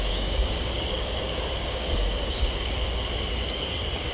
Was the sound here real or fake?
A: fake